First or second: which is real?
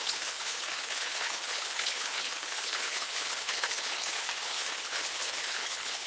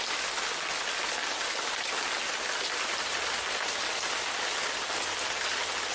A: second